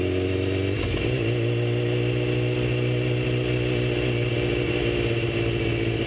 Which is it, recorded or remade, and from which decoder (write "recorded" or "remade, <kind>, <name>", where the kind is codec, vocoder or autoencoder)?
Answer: recorded